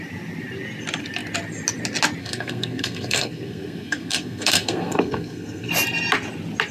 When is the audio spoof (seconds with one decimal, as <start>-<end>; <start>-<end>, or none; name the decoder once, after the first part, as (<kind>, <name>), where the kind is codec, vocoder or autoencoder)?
2.2-5.7 (codec, SNAC)